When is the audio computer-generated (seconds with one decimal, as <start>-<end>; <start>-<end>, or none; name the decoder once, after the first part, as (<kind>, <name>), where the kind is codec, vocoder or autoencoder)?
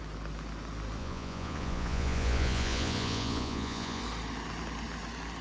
1.0-4.0 (vocoder, Vocos)